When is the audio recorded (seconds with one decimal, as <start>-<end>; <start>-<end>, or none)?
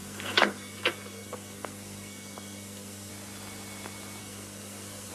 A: 3.1-4.2